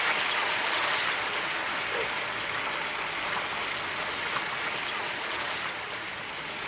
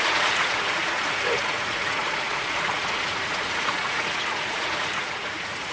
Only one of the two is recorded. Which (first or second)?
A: first